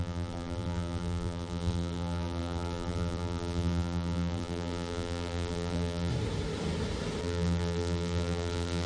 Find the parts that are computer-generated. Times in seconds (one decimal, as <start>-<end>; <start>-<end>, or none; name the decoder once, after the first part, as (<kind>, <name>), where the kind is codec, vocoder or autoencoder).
0.0-6.1 (vocoder, BigVGAN v2); 7.2-8.9

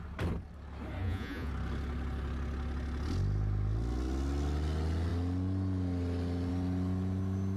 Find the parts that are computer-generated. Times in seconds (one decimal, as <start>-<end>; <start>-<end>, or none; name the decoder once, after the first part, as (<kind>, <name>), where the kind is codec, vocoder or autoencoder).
1.0-1.5 (vocoder, Vocos)